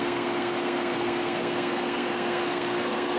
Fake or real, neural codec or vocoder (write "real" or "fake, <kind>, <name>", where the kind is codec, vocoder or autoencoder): fake, codec, SNAC